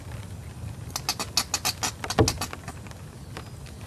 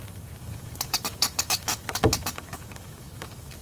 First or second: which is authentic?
first